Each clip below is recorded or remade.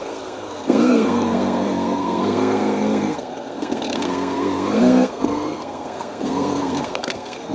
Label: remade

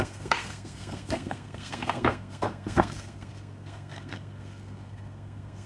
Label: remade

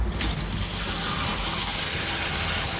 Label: recorded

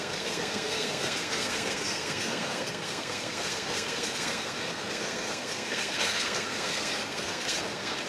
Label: remade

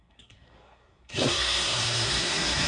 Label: remade